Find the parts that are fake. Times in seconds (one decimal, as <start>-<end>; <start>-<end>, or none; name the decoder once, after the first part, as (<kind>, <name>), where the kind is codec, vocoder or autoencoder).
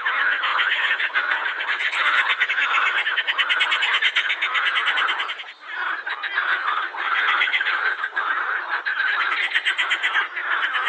0.5-2.5 (vocoder, WaveNeXt); 6.5-8.3